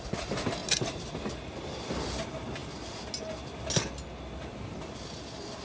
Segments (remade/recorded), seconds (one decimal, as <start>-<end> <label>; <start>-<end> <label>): 0.0-0.6 recorded; 0.6-1.9 remade; 1.9-5.6 recorded

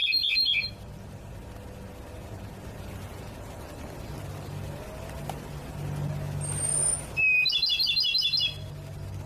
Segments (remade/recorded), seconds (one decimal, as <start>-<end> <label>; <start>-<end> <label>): 0.0-0.7 remade; 0.7-9.3 recorded

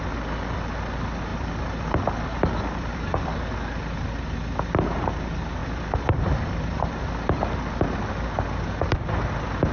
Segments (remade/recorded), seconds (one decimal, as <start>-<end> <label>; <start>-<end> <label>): 0.0-1.3 recorded; 1.3-3.4 remade; 3.4-5.6 recorded; 5.6-7.0 remade; 7.0-9.7 recorded

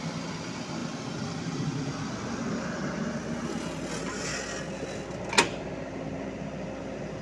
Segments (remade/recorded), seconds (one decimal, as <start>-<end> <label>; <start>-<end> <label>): 0.0-0.8 recorded; 0.8-3.9 remade; 3.9-7.2 recorded

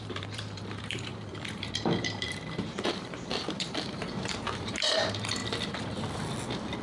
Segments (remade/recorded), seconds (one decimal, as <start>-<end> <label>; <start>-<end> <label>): 0.0-5.4 remade; 5.4-6.8 recorded